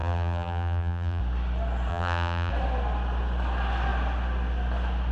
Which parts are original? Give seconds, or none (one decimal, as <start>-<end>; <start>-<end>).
1.2-1.9; 2.5-5.1